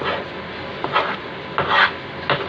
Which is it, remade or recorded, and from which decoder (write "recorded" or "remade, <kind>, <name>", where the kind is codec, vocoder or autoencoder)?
recorded